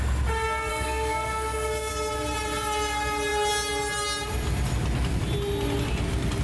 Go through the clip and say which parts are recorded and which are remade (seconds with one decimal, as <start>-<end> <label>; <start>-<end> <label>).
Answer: 0.0-0.7 recorded; 0.7-1.9 remade; 1.9-6.4 recorded